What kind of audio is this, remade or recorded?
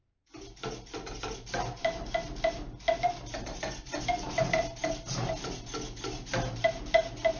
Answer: recorded